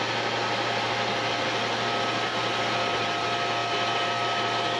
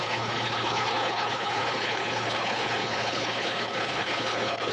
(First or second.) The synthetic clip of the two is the second